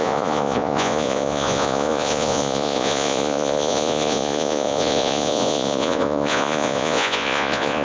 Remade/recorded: remade